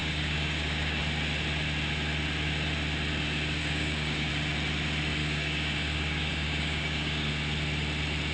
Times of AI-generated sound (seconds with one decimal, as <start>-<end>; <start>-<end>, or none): 0.0-1.0; 3.6-4.3; 5.2-7.3